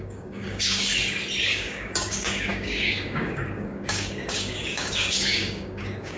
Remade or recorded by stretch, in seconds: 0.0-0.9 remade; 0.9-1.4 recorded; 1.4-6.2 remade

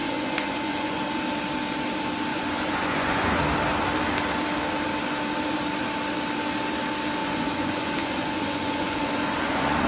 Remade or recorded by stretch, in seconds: 0.0-1.0 remade; 1.0-2.3 recorded; 2.3-3.4 remade; 3.4-7.2 recorded; 7.2-9.9 remade

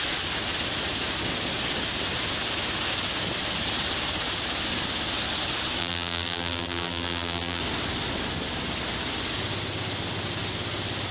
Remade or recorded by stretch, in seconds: 0.0-5.8 recorded; 5.8-7.6 remade; 7.6-11.1 recorded

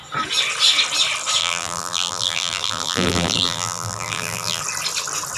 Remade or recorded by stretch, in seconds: 0.0-1.4 recorded; 1.4-4.6 remade; 4.6-5.4 recorded

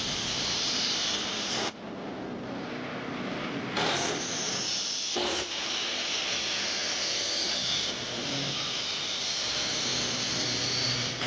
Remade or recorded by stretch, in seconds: 0.0-11.3 recorded

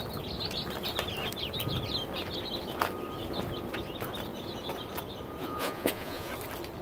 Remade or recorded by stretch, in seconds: 0.0-5.4 recorded; 5.4-6.3 remade; 6.3-6.8 recorded